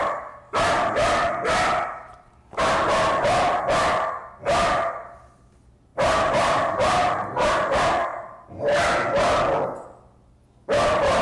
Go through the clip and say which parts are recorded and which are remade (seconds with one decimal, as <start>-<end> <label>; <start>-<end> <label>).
0.0-5.9 recorded; 5.9-7.5 remade; 7.5-8.1 recorded; 8.1-8.6 remade; 8.6-11.2 recorded